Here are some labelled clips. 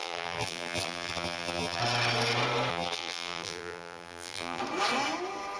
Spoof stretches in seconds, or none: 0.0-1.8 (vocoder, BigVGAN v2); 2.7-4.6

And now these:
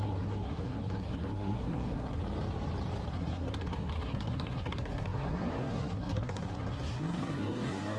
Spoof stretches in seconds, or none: 0.0-2.2 (codec, SNAC); 3.1-8.0

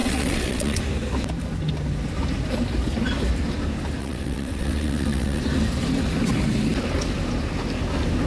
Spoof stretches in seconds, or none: 0.0-0.8 (vocoder, WaveNeXt); 4.0-5.4

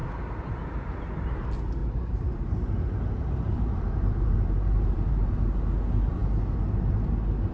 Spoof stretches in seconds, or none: 1.8-5.4 (vocoder, BigVGAN v2)

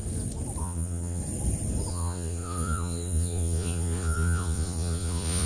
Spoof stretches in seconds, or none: 0.6-1.2 (vocoder, Vocos); 1.9-5.5

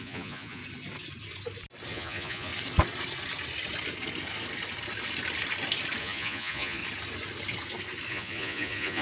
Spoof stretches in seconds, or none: 0.0-0.6 (vocoder, Vocos); 1.9-2.5; 6.0-6.8; 8.1-9.0

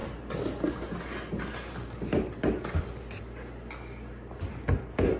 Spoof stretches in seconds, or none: none

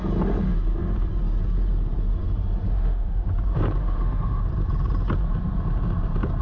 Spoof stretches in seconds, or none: 2.7-3.3 (autoencoder, DAC-VAE); 3.8-4.4